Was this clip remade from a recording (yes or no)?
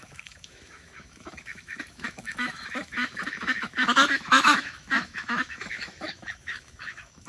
yes